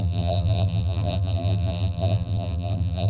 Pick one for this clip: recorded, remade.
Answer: remade